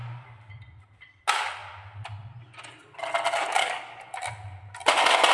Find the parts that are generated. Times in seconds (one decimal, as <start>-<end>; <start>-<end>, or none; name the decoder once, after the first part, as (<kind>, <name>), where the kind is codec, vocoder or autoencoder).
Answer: 3.6-4.1 (codec, DAC)